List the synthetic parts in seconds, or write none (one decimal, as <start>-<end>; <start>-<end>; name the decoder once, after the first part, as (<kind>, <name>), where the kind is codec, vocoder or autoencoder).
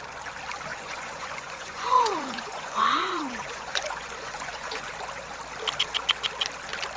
0.7-4.9 (vocoder, Vocos)